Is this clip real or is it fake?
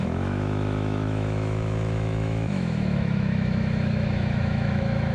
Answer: fake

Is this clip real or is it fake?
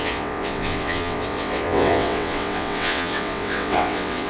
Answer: fake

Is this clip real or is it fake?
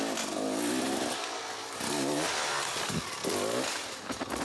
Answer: real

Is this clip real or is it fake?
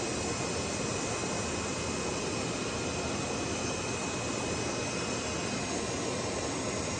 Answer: real